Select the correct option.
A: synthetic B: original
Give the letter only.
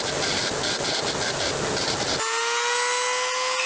B